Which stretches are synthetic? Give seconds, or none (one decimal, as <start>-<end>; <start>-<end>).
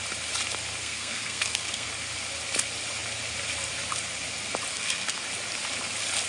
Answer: 0.8-1.9; 4.7-5.2